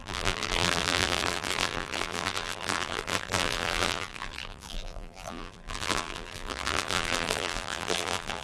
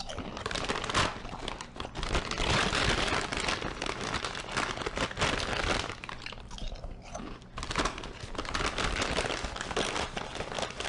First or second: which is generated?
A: first